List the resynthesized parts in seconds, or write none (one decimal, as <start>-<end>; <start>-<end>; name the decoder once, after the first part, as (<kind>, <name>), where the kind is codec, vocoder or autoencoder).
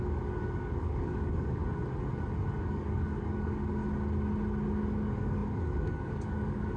0.0-1.6 (codec, DAC); 2.6-3.8; 4.7-6.8